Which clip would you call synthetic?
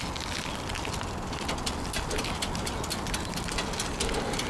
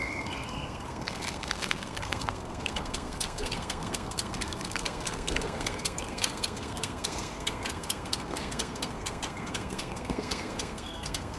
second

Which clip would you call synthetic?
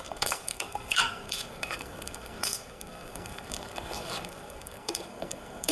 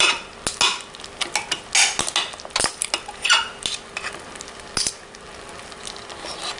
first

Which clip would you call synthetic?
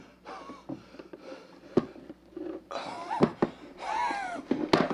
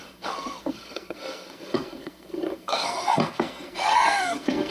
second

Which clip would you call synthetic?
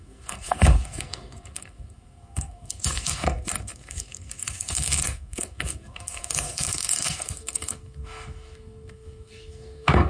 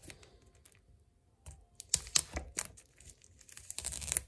first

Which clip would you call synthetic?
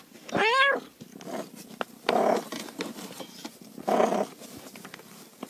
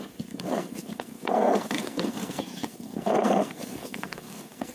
second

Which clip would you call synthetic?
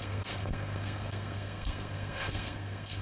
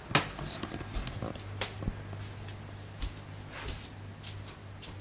first